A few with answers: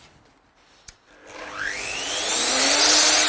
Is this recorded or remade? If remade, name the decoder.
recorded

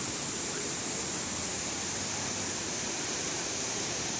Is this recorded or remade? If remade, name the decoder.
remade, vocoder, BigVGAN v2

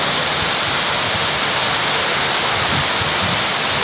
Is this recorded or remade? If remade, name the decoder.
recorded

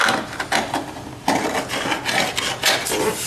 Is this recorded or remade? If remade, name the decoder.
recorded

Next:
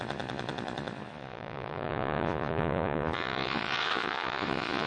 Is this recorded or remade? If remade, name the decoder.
remade, vocoder, Vocos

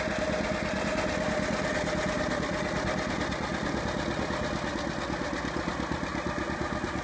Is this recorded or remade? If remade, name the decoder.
recorded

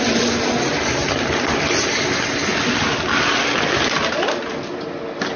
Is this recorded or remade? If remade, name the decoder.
recorded